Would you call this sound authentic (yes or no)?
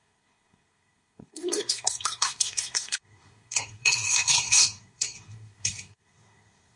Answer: no